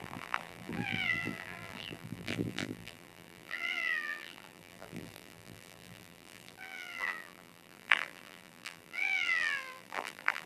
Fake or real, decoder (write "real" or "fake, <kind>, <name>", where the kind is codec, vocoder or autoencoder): fake, vocoder, BigVGAN v2